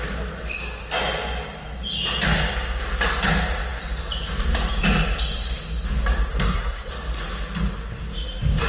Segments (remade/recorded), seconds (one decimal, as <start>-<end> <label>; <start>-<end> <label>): 0.0-6.3 recorded; 6.3-6.9 remade; 6.9-8.7 recorded